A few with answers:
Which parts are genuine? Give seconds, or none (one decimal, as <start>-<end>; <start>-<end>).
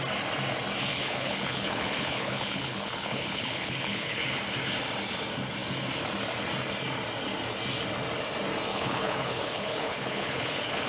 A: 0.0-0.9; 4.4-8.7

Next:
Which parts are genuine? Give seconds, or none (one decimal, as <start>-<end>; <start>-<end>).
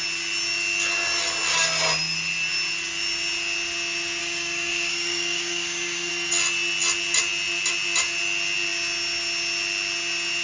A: 0.0-4.2; 6.1-10.4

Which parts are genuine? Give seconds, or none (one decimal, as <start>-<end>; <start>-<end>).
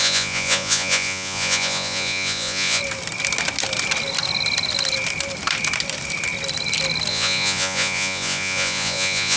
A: 2.8-7.1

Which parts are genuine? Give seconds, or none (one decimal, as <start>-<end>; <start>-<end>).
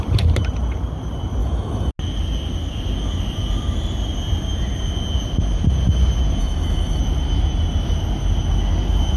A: 0.0-1.4; 1.9-6.4; 7.0-9.2